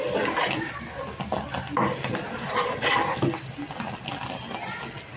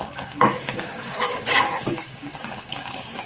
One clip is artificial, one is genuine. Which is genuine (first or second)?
first